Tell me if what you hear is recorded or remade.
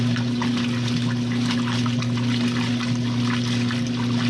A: recorded